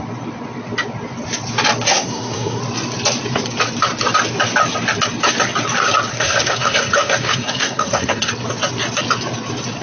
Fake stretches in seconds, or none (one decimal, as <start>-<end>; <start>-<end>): 1.9-2.6; 6.1-8.3